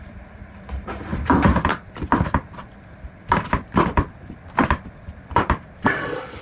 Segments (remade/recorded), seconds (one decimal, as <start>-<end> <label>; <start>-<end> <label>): 0.0-6.4 remade